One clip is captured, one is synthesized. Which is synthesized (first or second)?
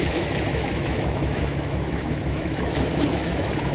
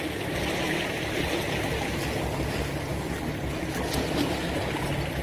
first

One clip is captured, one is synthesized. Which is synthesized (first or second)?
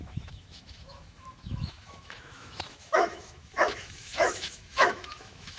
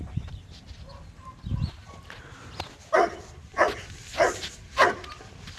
first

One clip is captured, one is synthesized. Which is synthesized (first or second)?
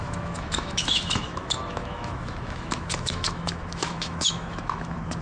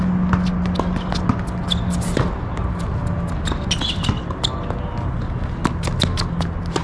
first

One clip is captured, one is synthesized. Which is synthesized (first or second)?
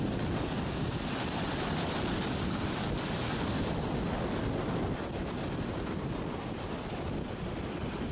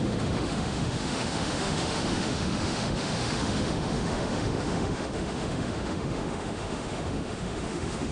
second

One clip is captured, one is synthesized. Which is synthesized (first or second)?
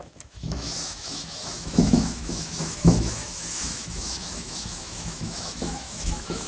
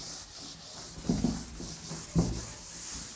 first